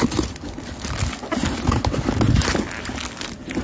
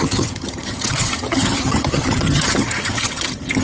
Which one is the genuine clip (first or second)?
first